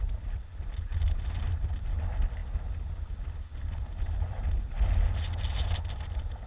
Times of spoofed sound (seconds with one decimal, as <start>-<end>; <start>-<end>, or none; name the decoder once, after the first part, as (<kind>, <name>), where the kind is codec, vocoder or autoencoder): none